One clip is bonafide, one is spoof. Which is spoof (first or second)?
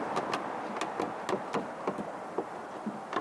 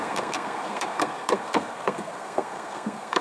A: second